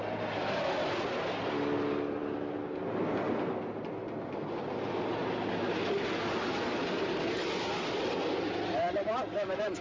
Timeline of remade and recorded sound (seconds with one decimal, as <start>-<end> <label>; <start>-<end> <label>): 0.0-9.8 recorded